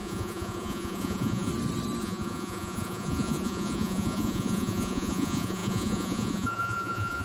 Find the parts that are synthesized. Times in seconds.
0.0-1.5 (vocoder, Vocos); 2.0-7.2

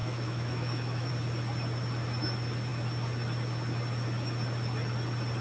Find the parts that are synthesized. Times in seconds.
0.0-1.1 (autoencoder, DAC-VAE)

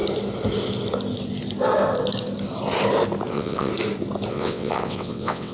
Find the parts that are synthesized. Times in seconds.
3.3-3.7 (vocoder, WaveNeXt); 4.3-5.5

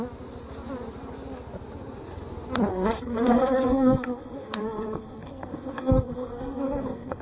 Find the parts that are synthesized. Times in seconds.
2.7-7.2 (codec, SNAC)

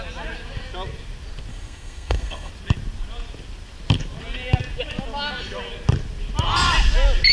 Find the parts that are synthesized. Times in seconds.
1.5-2.5 (codec, SNAC)

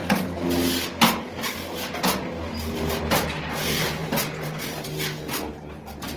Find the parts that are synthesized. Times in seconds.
none

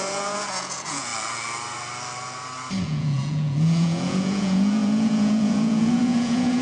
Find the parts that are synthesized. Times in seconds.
0.0-1.1 (vocoder, Vocos); 2.8-6.6

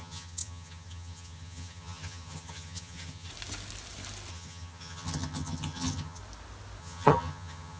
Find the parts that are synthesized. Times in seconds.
0.0-3.3 (vocoder, HiFi-GAN); 4.3-6.2; 6.8-7.8